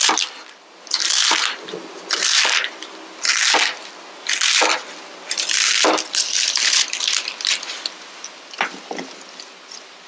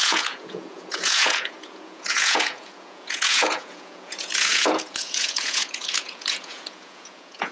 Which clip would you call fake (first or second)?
second